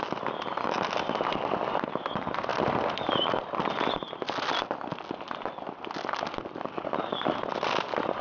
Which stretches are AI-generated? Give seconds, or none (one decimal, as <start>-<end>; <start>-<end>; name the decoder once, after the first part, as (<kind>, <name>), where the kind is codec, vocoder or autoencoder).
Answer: none